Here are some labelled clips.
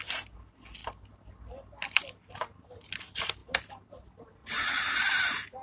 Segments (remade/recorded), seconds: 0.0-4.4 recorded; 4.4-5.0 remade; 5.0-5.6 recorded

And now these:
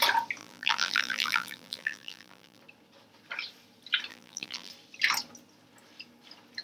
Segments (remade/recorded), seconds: 0.0-0.4 recorded; 0.4-2.6 remade; 2.6-4.1 recorded; 4.1-4.7 remade; 4.7-6.6 recorded